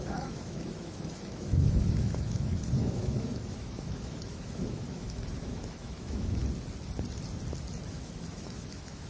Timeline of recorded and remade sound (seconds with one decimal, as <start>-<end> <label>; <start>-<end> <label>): 0.0-6.4 remade; 6.4-7.9 recorded; 7.9-9.1 remade